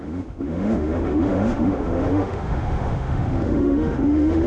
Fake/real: fake